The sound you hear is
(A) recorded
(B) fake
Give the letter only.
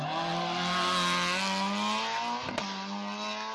A